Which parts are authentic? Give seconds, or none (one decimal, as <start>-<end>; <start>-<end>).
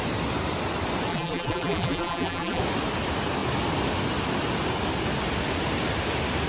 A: 0.0-1.1; 2.6-6.5